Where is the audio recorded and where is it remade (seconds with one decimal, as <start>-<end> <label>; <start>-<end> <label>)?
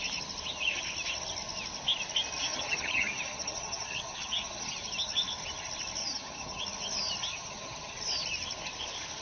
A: 0.0-2.4 recorded; 2.4-4.7 remade; 4.7-6.0 recorded; 6.0-6.6 remade; 6.6-7.3 recorded; 7.3-8.0 remade; 8.0-9.2 recorded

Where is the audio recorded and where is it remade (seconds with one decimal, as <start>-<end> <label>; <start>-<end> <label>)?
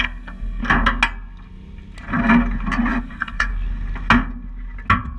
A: 0.0-0.6 remade; 0.6-3.0 recorded; 3.0-3.5 remade; 3.5-5.2 recorded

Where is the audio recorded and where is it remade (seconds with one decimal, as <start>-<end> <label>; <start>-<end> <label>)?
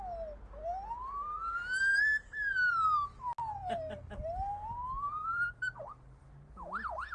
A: 0.0-7.1 recorded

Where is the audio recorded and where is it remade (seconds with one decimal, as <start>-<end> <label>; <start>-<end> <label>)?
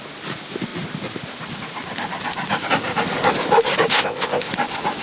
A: 0.0-3.9 recorded; 3.9-4.5 remade; 4.5-5.0 recorded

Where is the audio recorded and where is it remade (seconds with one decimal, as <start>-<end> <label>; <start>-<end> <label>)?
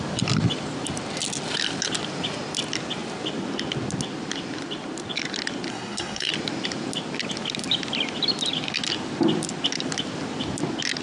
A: 0.0-5.7 recorded; 5.7-6.3 remade; 6.3-11.0 recorded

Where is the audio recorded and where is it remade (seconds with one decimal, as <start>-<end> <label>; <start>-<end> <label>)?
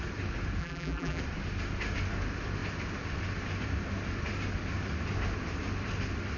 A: 0.0-0.6 recorded; 0.6-1.2 remade; 1.2-6.4 recorded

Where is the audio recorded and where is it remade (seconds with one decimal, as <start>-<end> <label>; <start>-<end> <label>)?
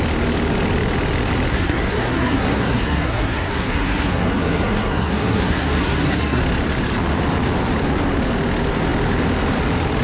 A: 0.0-1.5 recorded; 1.5-6.4 remade; 6.4-10.0 recorded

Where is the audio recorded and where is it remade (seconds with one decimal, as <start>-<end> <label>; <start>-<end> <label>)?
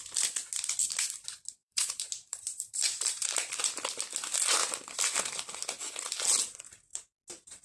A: 0.0-1.6 recorded; 1.6-3.6 remade; 3.6-7.6 recorded